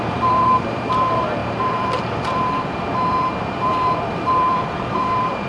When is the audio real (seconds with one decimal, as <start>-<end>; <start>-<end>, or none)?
none